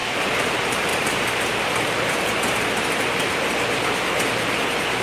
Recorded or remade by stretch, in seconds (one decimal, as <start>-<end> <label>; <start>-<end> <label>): 0.0-0.5 remade; 0.5-0.9 recorded; 0.9-3.3 remade; 3.3-5.0 recorded